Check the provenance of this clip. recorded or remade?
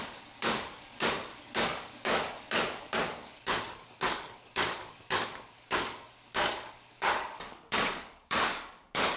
remade